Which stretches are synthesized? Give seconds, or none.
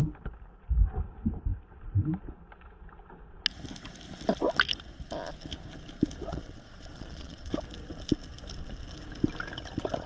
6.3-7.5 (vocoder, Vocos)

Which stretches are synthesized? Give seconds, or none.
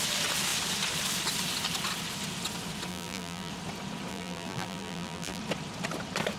2.9-3.5 (vocoder, BigVGAN v2); 4.1-5.4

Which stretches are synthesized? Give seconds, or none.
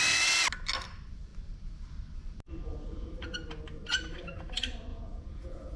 4.9-5.8 (vocoder, Vocos)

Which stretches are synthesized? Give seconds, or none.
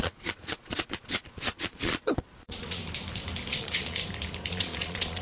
0.0-2.8 (vocoder, Vocos); 3.5-4.0; 4.5-5.2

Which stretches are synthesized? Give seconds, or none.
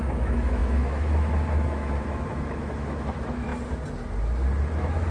0.0-3.5 (autoencoder, DAC-VAE); 4.6-5.1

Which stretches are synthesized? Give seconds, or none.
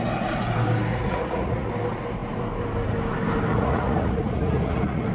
0.9-1.7 (vocoder, Vocos); 3.5-5.1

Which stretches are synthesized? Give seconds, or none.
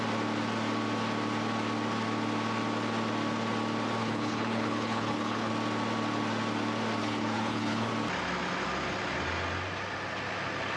4.0-5.5 (codec, HILCodec); 7.0-7.9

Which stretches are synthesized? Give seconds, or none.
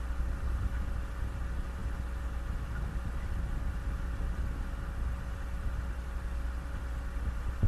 none